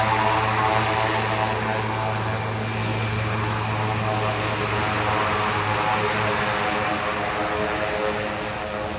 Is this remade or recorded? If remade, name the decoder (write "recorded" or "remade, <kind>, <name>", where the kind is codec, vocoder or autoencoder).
recorded